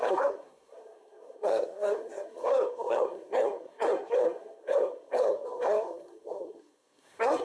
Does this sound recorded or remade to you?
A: remade